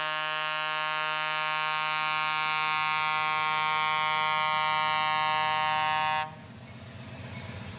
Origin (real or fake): real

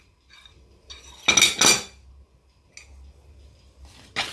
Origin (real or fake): real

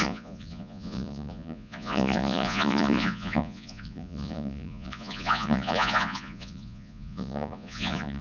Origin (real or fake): fake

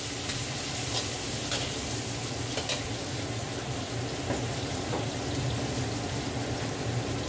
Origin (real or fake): real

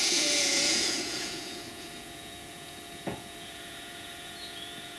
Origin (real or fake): fake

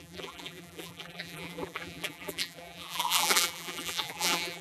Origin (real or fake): fake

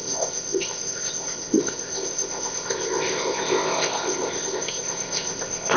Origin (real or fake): fake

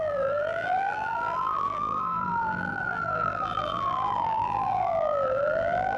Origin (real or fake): fake